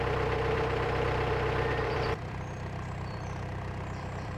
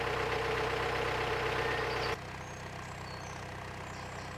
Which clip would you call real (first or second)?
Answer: second